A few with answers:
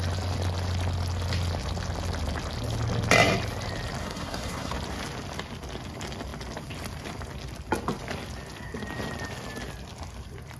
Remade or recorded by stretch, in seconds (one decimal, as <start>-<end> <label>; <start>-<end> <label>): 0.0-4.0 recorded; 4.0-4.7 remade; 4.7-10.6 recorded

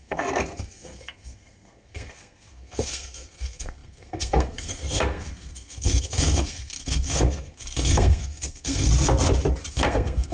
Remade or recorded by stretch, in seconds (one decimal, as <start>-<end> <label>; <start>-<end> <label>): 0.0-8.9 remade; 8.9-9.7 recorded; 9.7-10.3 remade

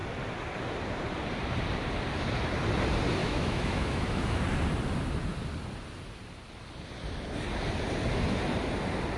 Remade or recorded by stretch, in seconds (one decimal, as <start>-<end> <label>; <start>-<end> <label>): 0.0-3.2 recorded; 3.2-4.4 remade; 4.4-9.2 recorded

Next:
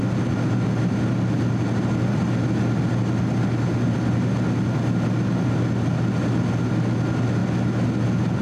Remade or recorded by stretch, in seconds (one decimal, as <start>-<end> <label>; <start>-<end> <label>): 0.0-8.4 recorded

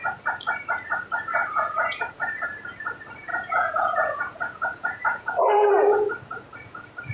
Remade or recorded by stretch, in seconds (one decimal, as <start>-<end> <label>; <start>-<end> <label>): 0.0-1.4 recorded; 1.4-2.1 remade; 2.1-3.3 recorded; 3.3-6.1 remade; 6.1-7.1 recorded

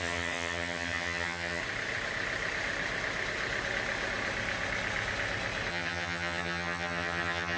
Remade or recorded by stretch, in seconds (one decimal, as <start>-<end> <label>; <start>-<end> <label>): 0.0-1.6 remade; 1.6-5.7 recorded; 5.7-7.6 remade

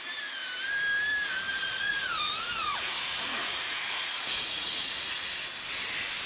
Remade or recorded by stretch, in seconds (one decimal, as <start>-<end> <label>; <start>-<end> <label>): 0.0-1.5 recorded; 1.5-5.3 remade; 5.3-6.3 recorded

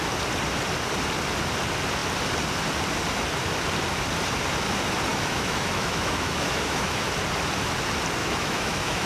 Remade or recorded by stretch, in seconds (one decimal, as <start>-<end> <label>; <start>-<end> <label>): 0.0-5.1 recorded; 5.1-7.0 remade; 7.0-8.2 recorded; 8.2-9.1 remade